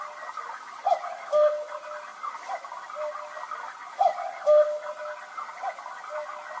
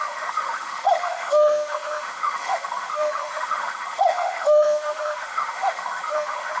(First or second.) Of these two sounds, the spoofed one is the second